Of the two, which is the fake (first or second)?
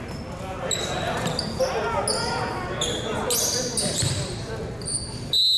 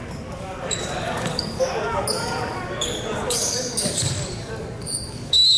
second